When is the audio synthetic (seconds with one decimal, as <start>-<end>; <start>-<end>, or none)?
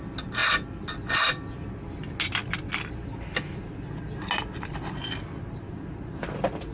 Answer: none